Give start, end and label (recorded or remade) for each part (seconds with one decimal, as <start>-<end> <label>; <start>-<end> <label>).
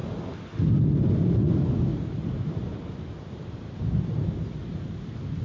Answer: 0.0-1.9 recorded; 1.9-5.0 remade; 5.0-5.4 recorded